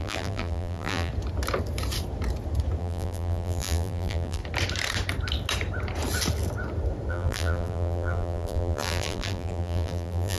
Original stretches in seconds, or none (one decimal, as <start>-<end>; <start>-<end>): 1.1-2.8; 4.4-7.1